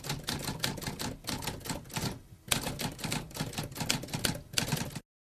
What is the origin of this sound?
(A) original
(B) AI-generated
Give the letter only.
A